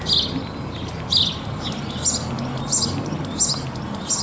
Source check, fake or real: real